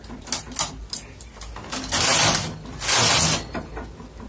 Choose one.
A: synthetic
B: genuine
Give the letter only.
B